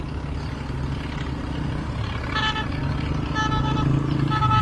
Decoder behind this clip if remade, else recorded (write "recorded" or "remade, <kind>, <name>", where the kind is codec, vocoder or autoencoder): recorded